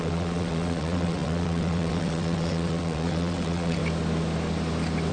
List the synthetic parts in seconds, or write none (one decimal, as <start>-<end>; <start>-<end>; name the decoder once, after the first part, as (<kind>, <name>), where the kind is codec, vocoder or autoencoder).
0.0-3.8 (vocoder, WaveNeXt)